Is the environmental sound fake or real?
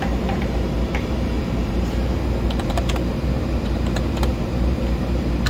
fake